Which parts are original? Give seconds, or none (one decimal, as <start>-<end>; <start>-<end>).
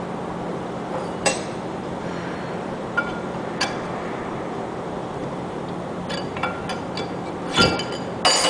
0.0-0.5; 5.6-8.5